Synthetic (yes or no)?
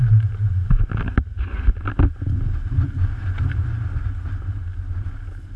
no